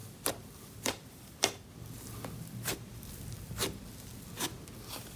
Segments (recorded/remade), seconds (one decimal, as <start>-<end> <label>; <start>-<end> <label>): 0.0-3.1 remade; 3.1-5.2 recorded